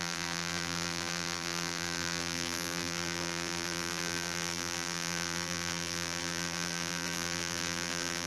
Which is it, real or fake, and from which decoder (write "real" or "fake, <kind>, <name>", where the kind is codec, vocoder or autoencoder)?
fake, vocoder, BigVGAN v2